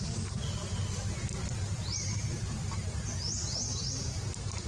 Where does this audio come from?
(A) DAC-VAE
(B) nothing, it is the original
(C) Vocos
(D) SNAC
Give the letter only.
B